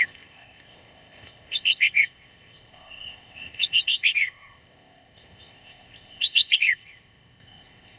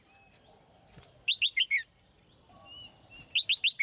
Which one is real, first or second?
second